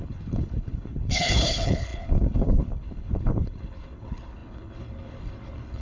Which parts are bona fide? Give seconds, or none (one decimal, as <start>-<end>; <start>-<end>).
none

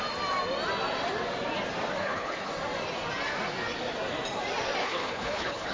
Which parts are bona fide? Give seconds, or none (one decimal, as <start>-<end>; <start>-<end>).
0.0-2.0; 2.5-4.8

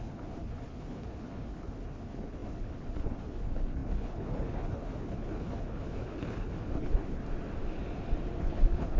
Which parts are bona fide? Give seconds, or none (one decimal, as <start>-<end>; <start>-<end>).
7.2-8.4

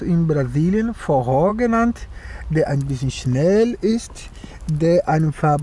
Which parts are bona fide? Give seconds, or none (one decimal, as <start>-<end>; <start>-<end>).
0.0-5.6